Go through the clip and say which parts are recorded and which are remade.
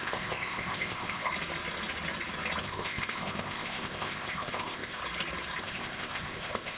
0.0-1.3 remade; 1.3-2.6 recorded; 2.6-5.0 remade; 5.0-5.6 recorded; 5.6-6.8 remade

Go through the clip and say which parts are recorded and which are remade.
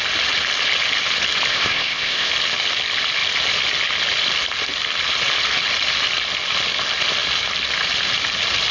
0.0-1.5 recorded; 1.5-2.3 remade; 2.3-8.7 recorded